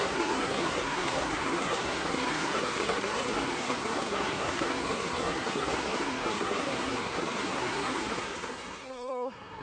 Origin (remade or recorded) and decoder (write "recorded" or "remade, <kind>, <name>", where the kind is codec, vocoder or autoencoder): remade, codec, SNAC